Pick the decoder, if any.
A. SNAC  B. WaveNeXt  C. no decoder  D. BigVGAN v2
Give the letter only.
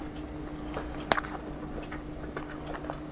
C